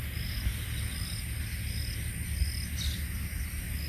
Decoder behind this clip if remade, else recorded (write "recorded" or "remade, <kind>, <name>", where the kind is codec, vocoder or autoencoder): recorded